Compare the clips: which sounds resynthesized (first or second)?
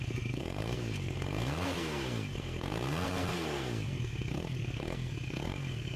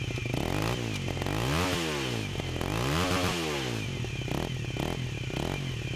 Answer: first